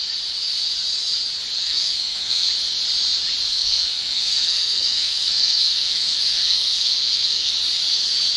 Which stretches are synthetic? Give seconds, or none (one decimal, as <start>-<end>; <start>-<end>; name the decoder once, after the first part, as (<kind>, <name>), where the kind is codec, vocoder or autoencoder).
1.6-2.5 (codec, SNAC); 3.5-7.5